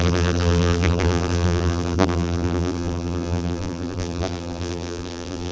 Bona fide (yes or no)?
no